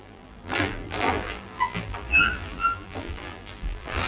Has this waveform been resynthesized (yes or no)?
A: yes